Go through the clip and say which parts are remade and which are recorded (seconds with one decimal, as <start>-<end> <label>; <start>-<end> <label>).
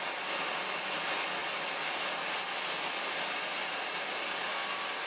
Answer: 0.0-5.1 recorded